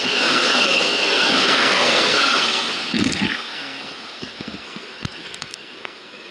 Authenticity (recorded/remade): remade